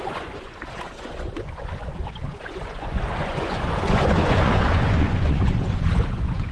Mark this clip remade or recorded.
remade